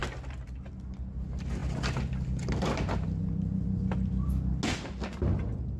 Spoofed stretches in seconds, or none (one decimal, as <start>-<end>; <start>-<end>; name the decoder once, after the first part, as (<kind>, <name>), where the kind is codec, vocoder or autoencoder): none